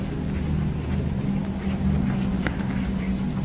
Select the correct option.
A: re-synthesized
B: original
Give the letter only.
B